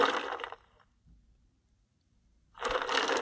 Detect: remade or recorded recorded